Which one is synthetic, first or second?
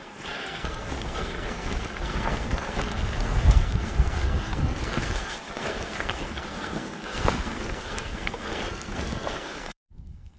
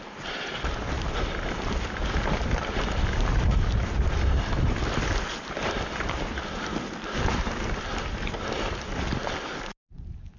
first